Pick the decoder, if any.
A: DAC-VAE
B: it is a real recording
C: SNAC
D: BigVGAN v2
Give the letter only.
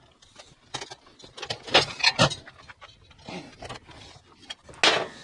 B